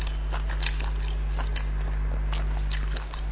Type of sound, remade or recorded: recorded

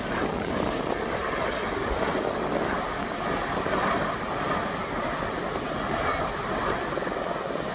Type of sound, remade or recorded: recorded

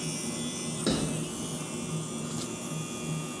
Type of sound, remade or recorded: recorded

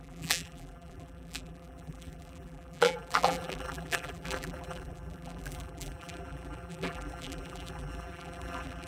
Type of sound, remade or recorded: remade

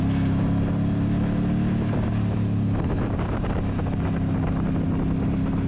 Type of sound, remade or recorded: recorded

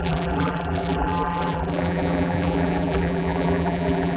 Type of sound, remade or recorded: remade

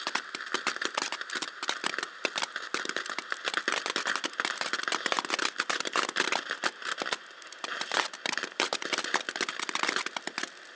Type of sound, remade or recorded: recorded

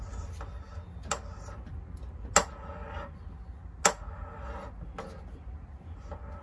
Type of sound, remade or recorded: recorded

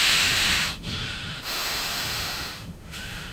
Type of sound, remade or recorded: remade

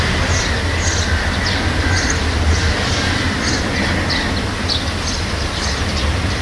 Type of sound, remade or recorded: recorded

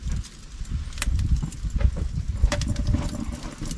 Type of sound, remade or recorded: recorded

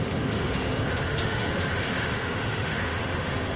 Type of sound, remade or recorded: remade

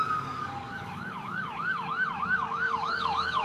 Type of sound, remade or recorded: remade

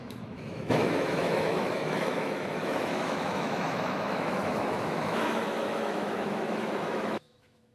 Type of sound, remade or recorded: remade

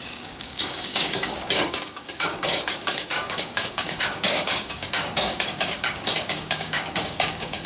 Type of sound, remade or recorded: remade